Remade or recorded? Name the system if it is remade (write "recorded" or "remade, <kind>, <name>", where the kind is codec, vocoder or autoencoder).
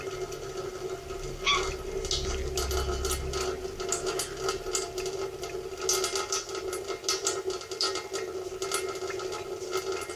recorded